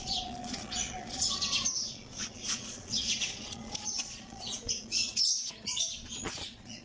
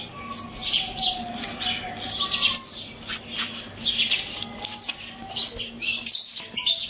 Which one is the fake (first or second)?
first